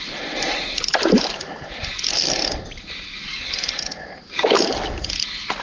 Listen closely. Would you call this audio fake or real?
real